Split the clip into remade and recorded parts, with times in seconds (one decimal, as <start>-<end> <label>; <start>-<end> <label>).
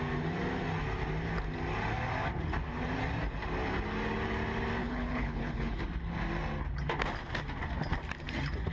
0.0-4.8 recorded; 4.8-5.8 remade; 5.8-8.7 recorded